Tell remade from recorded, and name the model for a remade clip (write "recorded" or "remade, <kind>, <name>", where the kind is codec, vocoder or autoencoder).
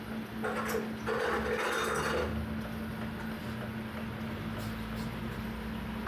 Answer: recorded